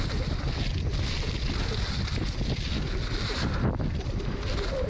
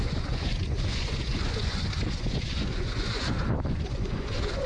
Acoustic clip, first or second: first